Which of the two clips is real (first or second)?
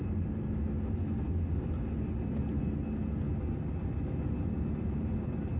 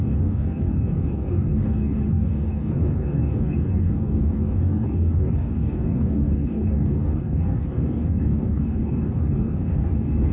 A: first